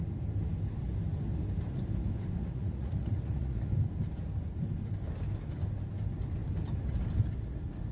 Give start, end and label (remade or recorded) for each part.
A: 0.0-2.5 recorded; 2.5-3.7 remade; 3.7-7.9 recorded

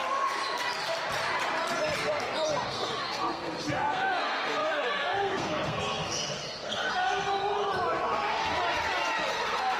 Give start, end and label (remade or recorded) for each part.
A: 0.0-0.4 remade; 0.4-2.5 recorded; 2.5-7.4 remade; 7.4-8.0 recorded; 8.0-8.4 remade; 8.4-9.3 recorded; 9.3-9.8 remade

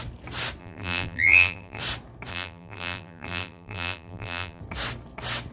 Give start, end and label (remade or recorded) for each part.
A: 0.0-0.6 recorded; 0.6-1.8 remade; 1.8-2.3 recorded; 2.3-4.6 remade; 4.6-5.5 recorded

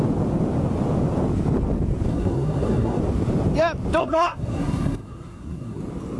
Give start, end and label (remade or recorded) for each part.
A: 0.0-2.1 recorded; 2.1-3.0 remade; 3.0-4.0 recorded; 4.0-5.8 remade; 5.8-6.2 recorded